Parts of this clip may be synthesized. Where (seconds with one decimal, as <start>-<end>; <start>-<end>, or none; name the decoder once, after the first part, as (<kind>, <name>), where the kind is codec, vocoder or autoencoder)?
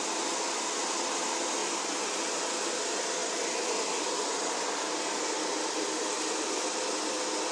none